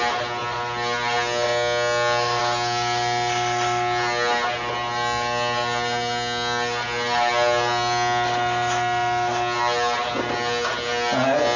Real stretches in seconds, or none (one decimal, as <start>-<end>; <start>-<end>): 0.0-11.6

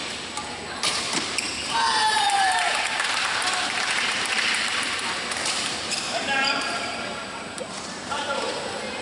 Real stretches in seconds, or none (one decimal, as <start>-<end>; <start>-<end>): 0.0-0.8

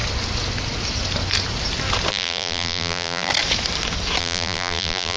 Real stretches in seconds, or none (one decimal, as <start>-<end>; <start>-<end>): 0.0-2.1; 3.3-4.2

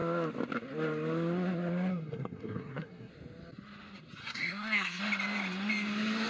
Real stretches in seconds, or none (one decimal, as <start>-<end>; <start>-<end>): 0.0-1.9; 3.1-4.2; 5.0-6.3

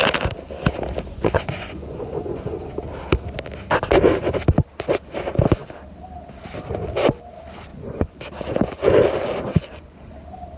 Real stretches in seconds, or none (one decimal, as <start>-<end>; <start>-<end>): 0.0-1.1; 2.7-7.7; 8.2-9.5; 10.1-10.6

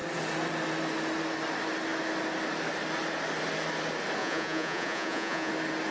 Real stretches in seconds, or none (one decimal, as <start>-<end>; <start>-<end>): 0.0-4.2; 5.5-5.9

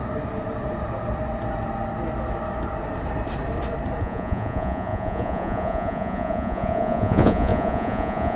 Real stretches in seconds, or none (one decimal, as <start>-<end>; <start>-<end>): 0.0-4.0

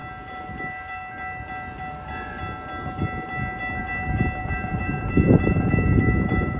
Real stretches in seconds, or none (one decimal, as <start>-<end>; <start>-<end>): 0.0-4.4